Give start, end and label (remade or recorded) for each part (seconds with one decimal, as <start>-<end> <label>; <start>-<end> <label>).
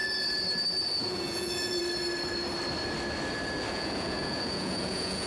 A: 0.0-1.0 recorded; 1.0-1.8 remade; 1.8-3.7 recorded; 3.7-5.3 remade